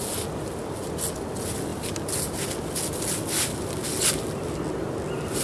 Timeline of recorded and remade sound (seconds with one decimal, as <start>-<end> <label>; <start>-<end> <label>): 0.0-5.4 recorded